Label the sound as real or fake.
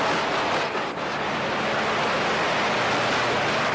real